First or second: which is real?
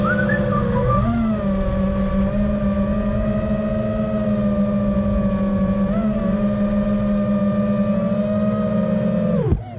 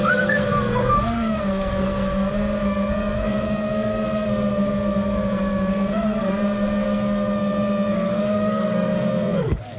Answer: first